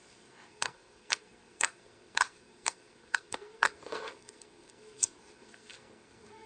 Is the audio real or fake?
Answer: fake